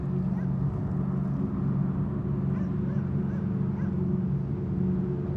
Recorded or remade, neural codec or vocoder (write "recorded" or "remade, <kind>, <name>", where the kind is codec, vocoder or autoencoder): recorded